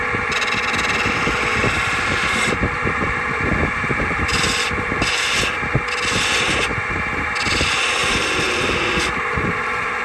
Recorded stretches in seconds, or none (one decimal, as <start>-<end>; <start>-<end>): 0.0-1.6; 4.4-8.0; 8.8-10.0